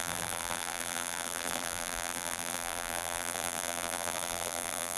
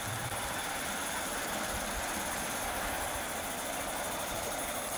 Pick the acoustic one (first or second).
second